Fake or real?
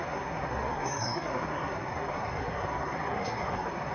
fake